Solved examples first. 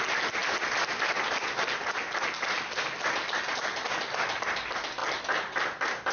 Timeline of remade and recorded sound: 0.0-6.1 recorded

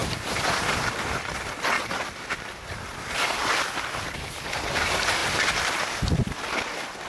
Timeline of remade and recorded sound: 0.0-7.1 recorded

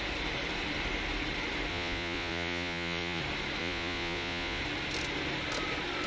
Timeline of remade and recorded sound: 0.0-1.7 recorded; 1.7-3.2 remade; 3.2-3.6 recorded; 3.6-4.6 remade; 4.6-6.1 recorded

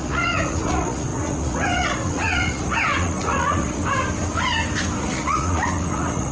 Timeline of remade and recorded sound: 0.0-3.8 remade; 3.8-5.0 recorded; 5.0-6.3 remade